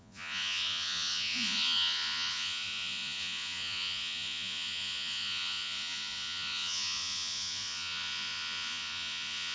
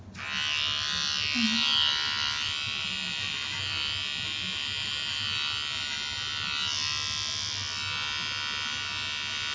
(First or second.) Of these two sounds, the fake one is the first